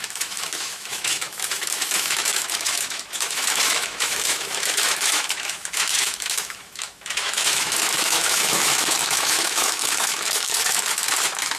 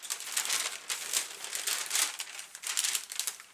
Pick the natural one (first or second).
second